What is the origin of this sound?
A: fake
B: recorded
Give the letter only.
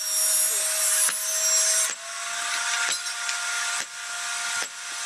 B